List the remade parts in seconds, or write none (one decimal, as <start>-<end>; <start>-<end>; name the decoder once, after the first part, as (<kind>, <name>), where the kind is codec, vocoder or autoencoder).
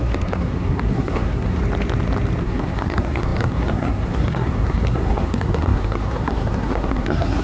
0.0-1.6 (codec, SNAC); 2.4-7.4